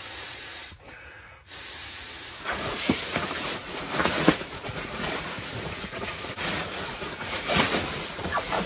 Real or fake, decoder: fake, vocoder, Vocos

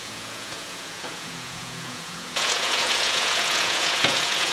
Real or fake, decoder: fake, vocoder, Vocos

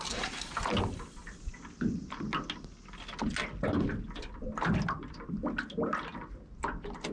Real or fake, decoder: real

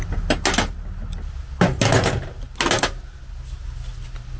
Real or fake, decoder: real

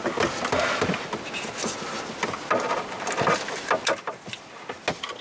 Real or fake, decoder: real